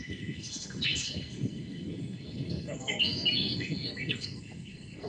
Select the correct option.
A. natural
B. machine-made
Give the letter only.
B